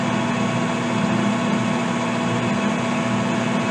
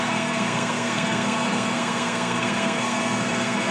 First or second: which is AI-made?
second